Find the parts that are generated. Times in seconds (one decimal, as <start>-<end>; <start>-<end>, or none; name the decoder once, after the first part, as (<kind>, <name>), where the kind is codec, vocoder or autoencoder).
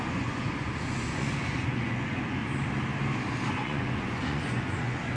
0.0-2.4 (vocoder, Vocos); 3.5-5.2